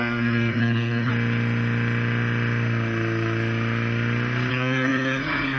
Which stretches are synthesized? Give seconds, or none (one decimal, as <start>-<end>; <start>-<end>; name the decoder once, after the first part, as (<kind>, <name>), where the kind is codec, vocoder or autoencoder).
0.0-1.1 (codec, SNAC); 4.5-5.6